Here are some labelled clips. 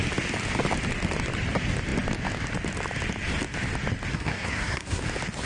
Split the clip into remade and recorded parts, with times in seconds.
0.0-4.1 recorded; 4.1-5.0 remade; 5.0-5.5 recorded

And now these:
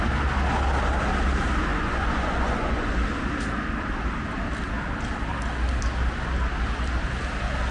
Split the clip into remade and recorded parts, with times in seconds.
0.0-1.7 recorded; 1.7-2.9 remade; 2.9-7.7 recorded

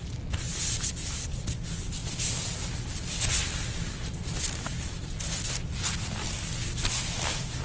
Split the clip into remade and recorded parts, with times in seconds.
0.0-7.6 recorded